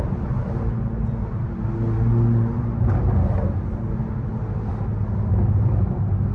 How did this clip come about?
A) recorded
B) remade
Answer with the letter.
A